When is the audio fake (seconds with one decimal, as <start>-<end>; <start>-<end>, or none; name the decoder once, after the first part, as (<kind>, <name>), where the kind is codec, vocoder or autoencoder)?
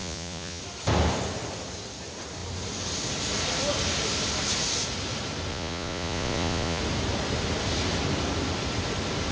0.0-0.6 (vocoder, Vocos); 5.5-6.8